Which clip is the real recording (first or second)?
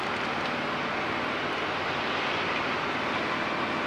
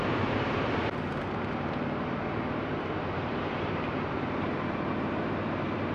first